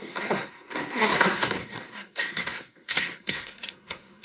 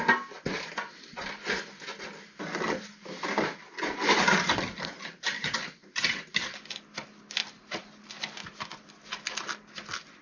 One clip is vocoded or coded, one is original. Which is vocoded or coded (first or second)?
first